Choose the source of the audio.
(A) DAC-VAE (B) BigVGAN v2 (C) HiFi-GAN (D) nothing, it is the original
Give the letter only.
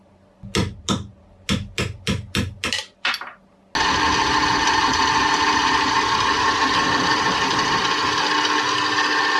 D